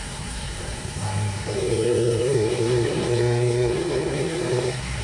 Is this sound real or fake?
fake